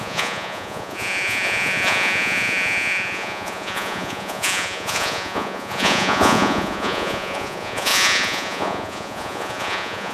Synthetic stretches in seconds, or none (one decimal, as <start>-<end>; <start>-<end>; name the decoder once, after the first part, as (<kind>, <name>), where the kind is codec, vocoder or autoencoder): 0.0-10.1 (vocoder, Vocos)